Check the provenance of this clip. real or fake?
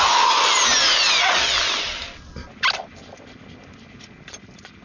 real